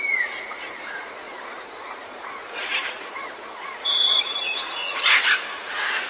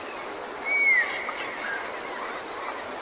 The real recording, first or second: second